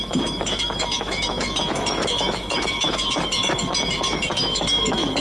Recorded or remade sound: remade